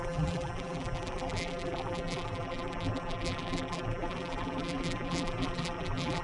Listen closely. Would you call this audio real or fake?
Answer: fake